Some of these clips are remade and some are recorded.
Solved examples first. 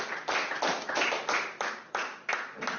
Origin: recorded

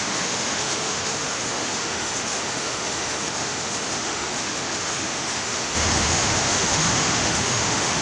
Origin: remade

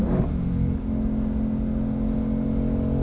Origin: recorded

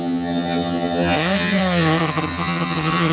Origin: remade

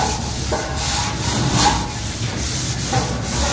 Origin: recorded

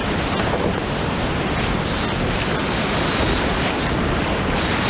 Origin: remade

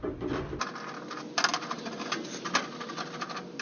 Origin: recorded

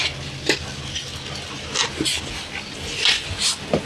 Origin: recorded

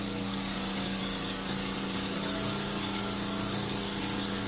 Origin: remade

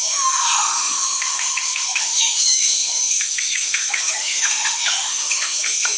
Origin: remade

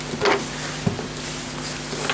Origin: recorded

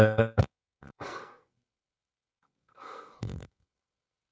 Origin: remade